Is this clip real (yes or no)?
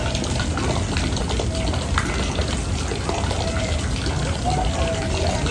yes